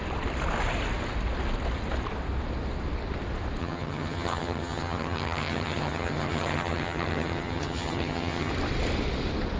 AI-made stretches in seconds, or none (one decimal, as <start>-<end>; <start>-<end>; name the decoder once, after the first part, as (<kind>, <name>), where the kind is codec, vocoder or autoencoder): 3.6-8.5 (vocoder, HiFi-GAN)